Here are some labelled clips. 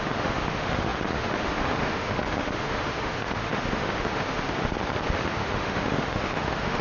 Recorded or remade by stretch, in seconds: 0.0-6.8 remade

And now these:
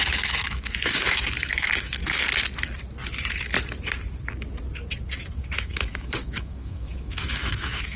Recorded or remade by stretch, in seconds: 0.0-2.0 remade; 2.0-5.3 recorded; 5.3-8.0 remade